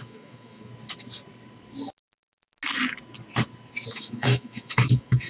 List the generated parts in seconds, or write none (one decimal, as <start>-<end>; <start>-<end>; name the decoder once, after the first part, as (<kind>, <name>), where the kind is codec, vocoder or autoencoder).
0.0-0.7 (autoencoder, DAC-VAE); 3.9-5.3